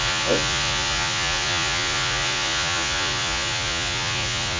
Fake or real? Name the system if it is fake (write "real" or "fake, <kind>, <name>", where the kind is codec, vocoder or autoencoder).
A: fake, vocoder, Vocos